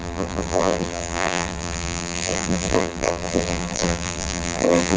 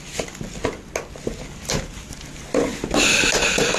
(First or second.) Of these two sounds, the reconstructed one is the first